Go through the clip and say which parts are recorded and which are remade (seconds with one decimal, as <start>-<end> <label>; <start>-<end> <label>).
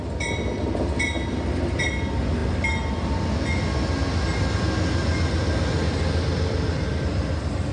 0.0-7.7 recorded